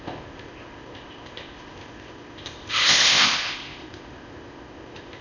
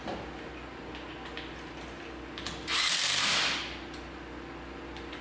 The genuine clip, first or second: second